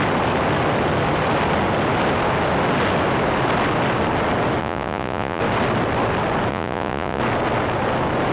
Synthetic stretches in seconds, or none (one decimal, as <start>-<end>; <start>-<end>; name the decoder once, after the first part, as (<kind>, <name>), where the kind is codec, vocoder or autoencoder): 4.6-5.4 (vocoder, Vocos); 6.5-7.2